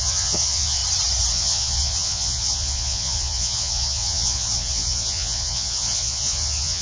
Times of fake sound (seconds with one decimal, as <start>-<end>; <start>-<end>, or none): 0.0-0.8; 1.3-6.8